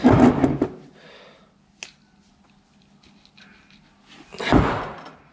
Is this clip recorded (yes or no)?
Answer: yes